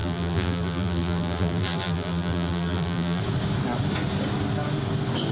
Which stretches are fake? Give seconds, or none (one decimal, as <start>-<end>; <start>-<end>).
0.0-3.2